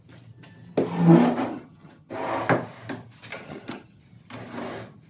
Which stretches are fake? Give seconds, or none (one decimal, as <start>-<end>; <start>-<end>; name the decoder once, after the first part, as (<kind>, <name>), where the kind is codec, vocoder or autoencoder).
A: 1.5-2.1 (vocoder, HiFi-GAN); 3.3-4.0